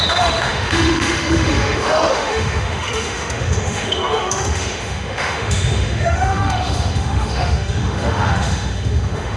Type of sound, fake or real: fake